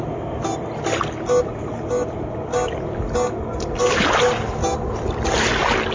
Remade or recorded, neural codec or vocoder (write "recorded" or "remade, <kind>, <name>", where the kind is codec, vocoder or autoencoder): recorded